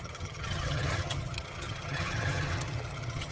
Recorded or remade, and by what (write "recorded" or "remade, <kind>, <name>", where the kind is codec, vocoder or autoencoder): remade, vocoder, HiFi-GAN